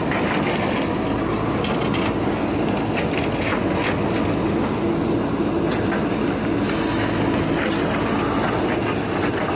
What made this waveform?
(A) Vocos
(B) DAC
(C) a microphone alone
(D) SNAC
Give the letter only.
C